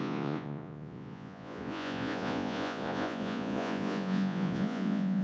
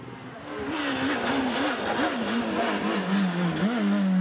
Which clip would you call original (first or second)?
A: second